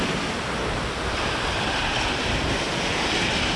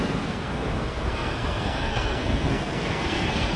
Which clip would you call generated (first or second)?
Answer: second